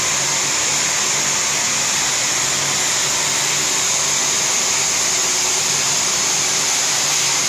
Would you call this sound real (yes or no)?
yes